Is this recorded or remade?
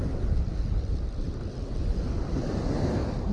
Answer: recorded